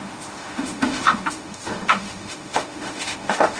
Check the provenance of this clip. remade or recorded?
remade